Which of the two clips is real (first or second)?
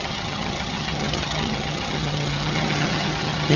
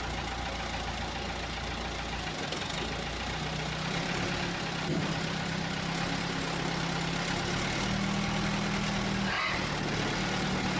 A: second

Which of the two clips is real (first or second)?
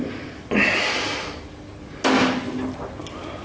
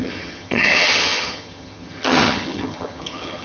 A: first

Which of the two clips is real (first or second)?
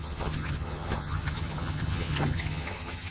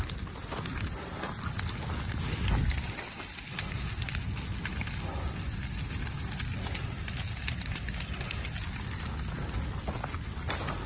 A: second